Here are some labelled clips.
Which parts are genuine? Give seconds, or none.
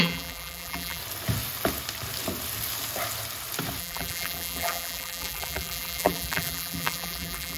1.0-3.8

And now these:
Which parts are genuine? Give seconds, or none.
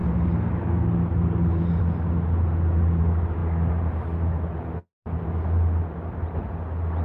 0.0-7.0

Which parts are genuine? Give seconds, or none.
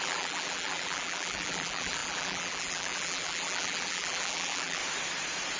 4.8-5.6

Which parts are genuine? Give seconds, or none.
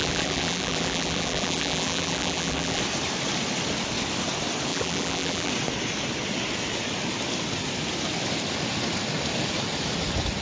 2.8-4.7; 5.5-10.4